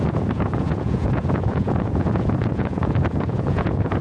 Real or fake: fake